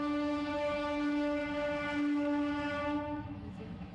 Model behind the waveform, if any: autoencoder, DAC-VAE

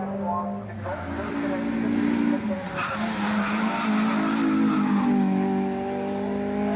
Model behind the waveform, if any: none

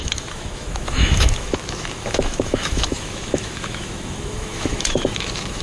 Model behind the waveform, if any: autoencoder, DAC-VAE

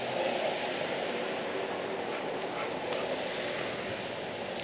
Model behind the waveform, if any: none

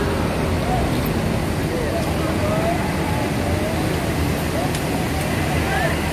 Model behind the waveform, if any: none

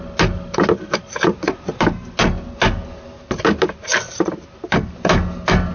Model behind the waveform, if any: none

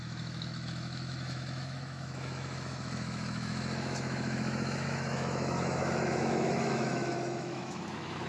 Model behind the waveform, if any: autoencoder, DAC-VAE